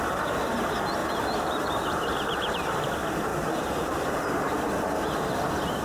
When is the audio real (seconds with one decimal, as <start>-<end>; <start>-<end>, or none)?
0.0-1.0; 2.9-3.3; 4.2-5.8